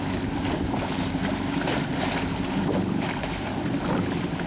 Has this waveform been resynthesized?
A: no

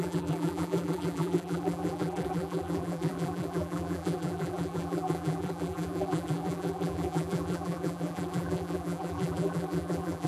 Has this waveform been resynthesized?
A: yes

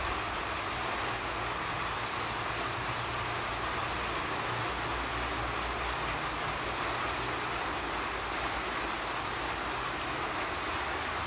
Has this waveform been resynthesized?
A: no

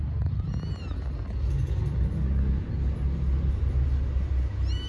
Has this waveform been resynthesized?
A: no